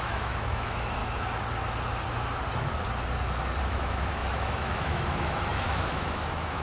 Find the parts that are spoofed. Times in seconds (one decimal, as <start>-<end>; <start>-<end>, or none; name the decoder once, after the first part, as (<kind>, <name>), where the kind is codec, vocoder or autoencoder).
0.0-1.0 (autoencoder, DAC-VAE); 3.6-6.6